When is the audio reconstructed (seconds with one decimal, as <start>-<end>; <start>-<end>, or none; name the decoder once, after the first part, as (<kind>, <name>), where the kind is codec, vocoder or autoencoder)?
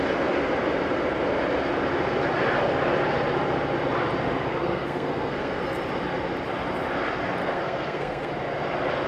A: 4.5-5.6 (codec, SNAC); 7.4-8.3